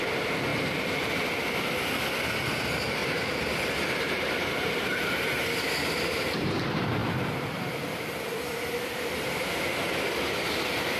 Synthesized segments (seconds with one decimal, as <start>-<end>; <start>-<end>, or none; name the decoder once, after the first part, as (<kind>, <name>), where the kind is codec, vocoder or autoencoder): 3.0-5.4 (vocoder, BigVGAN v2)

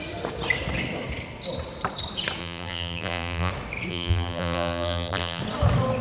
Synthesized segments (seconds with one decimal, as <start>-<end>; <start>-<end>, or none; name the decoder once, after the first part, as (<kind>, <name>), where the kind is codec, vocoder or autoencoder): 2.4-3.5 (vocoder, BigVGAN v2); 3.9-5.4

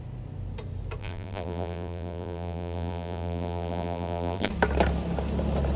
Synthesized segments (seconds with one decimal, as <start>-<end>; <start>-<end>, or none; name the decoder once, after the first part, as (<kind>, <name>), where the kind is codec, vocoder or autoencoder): 1.0-4.5 (vocoder, BigVGAN v2)

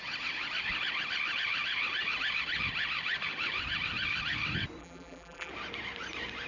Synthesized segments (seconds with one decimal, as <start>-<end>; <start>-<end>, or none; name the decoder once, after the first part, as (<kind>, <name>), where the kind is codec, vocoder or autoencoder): 4.8-5.5 (vocoder, BigVGAN v2)